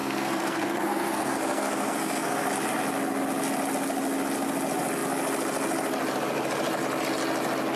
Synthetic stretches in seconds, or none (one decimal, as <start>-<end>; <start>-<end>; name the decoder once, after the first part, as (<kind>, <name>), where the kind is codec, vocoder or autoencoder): 0.0-2.5 (codec, SNAC)